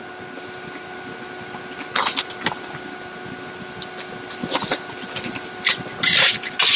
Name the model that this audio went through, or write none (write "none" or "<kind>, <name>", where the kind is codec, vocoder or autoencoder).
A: none